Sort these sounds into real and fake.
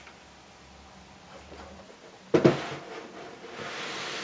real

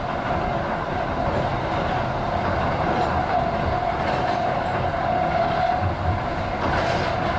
fake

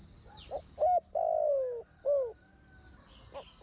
real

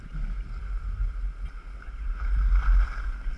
real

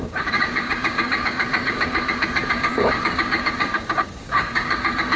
fake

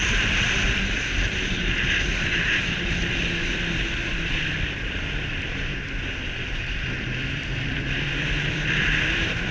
fake